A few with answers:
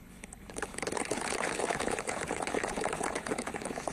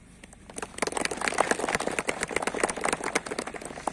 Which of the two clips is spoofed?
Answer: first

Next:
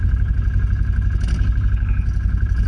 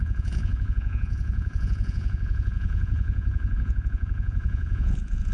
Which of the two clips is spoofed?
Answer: second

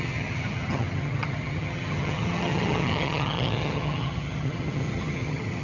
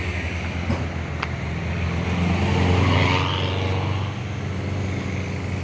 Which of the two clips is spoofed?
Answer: first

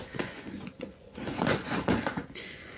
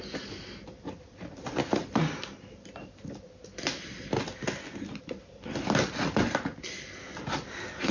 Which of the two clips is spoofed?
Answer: first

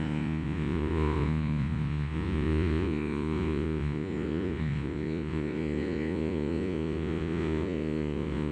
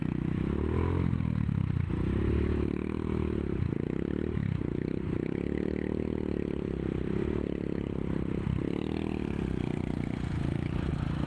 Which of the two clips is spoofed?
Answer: first